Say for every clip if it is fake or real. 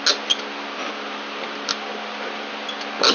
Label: real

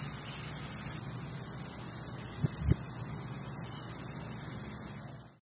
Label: real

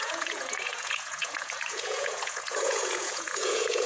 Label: fake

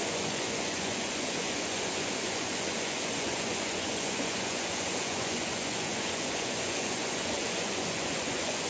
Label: fake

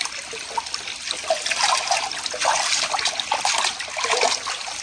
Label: real